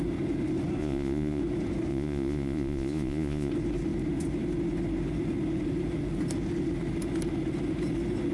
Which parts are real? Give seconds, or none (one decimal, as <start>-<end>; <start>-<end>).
0.0-0.8; 1.4-1.9; 3.5-8.3